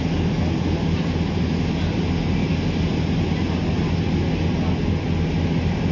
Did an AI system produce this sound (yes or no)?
no